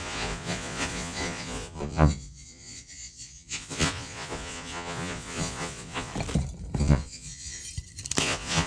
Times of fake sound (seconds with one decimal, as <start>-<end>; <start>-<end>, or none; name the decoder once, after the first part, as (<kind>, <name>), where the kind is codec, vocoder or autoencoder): 0.0-6.1 (vocoder, Vocos); 6.8-7.6; 8.2-8.7